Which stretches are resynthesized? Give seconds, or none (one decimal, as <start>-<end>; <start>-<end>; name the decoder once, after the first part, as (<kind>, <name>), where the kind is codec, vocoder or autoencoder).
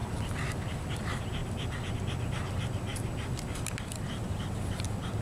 1.0-1.4 (vocoder, BigVGAN v2); 2.2-5.2